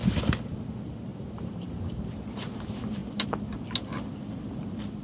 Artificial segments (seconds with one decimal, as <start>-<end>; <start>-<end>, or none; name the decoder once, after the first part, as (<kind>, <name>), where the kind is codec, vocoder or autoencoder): none